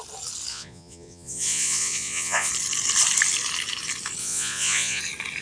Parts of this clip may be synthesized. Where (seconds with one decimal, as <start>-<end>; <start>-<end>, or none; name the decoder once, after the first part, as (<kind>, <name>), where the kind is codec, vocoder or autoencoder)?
0.5-2.5 (vocoder, Vocos); 4.2-5.0